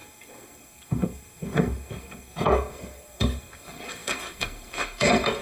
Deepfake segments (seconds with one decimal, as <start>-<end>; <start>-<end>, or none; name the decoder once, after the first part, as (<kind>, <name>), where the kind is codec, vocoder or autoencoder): 0.0-5.4 (codec, SNAC)